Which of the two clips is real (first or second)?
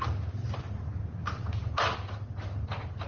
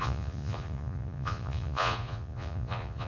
first